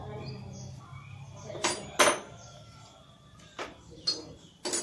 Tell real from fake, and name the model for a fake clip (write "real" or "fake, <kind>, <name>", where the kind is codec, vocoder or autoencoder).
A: real